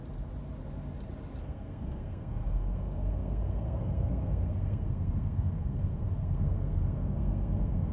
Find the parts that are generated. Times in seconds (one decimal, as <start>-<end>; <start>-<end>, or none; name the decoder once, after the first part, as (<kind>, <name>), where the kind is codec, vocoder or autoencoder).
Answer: 1.4-7.9 (codec, SNAC)